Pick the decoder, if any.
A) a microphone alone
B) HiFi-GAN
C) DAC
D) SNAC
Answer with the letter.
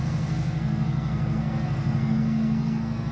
D